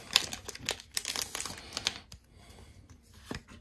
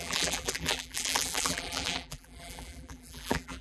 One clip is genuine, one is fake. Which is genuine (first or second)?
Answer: first